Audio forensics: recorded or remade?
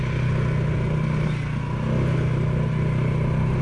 recorded